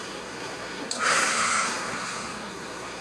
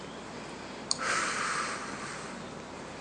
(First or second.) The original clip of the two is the second